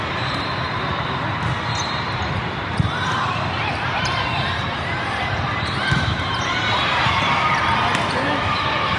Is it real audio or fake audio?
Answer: fake